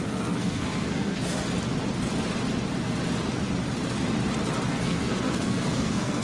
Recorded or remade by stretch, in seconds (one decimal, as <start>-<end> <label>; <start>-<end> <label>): 0.0-1.2 remade; 1.2-4.7 recorded; 4.7-6.2 remade